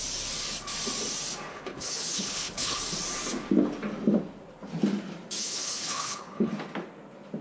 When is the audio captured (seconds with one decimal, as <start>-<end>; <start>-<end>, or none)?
0.0-1.5; 2.8-5.4; 6.5-7.4